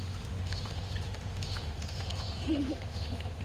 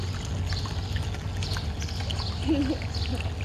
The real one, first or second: second